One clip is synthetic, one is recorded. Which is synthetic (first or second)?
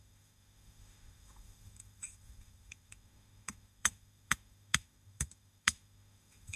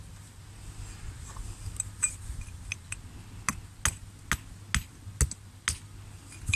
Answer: first